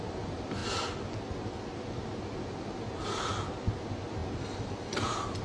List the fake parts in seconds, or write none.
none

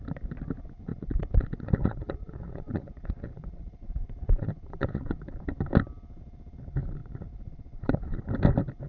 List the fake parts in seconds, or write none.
0.9-5.4 (vocoder, Vocos); 7.0-8.3

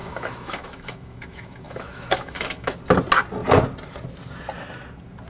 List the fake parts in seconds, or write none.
0.0-2.7 (autoencoder, DAC-VAE)

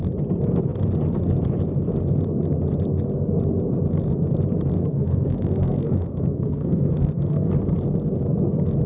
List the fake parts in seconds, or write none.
4.8-7.5 (codec, SNAC)